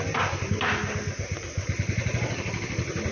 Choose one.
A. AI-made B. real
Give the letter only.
B